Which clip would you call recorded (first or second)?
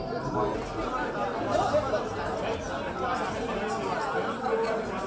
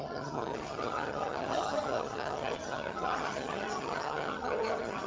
first